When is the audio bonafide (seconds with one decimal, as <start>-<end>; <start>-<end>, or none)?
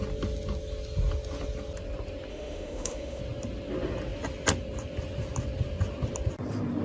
0.0-2.3; 3.2-6.8